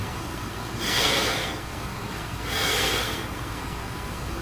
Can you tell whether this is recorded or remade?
remade